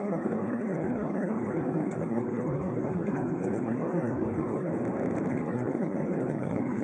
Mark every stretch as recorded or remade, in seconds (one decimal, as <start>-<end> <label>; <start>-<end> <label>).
0.0-4.7 remade; 4.7-5.3 recorded; 5.3-6.8 remade